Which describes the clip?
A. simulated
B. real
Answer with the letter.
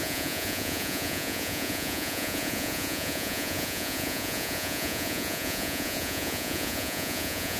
A